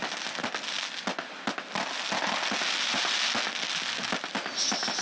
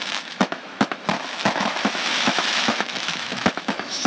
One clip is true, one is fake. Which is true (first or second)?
first